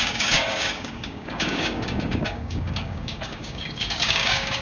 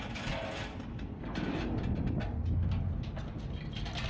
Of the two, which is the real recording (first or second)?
second